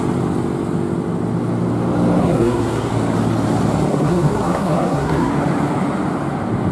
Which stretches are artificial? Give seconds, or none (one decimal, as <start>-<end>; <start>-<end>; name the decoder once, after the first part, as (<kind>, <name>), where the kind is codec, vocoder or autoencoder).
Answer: 2.2-2.9 (codec, SNAC); 3.9-5.3